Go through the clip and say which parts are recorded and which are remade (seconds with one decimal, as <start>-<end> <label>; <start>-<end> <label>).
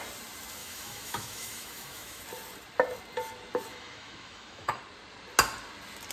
0.0-0.6 recorded; 0.6-2.2 remade; 2.2-3.7 recorded; 3.7-4.8 remade; 4.8-6.1 recorded